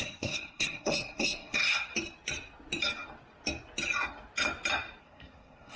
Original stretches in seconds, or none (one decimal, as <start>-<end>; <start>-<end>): 1.9-5.0